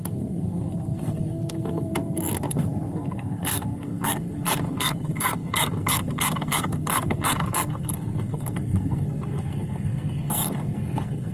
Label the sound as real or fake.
fake